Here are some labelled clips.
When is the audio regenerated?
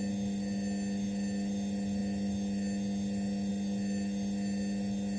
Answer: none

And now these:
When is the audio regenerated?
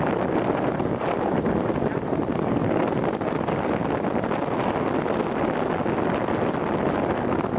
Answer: none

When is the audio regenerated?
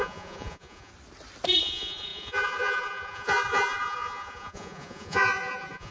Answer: 0.0-0.9 (vocoder, Vocos); 1.6-5.9